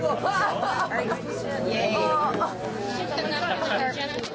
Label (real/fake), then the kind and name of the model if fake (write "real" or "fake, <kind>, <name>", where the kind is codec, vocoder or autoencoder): real